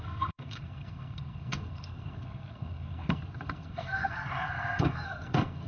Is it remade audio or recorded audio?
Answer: remade